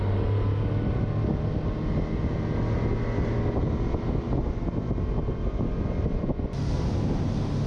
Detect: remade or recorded recorded